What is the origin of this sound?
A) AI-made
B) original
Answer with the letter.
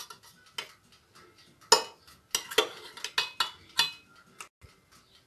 B